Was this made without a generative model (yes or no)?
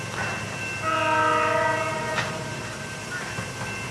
yes